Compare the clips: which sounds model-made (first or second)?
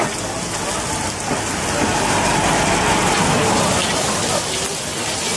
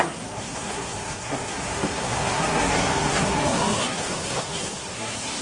second